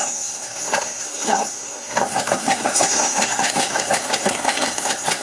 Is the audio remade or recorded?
remade